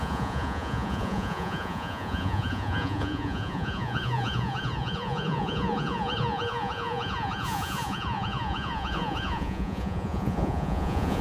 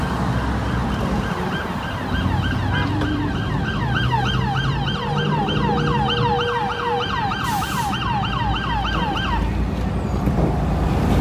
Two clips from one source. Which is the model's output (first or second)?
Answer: first